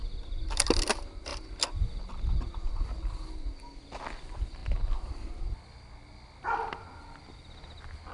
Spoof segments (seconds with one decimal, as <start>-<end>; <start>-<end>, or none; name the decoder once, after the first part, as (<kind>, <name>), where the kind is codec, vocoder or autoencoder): none